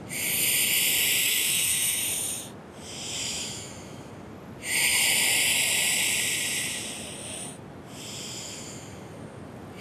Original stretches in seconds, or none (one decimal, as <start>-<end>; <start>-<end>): 0.0-1.2; 2.0-3.2; 4.1-9.8